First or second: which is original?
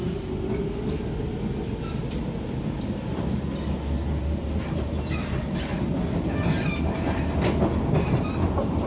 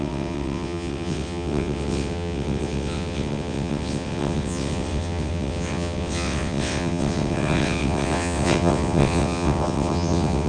first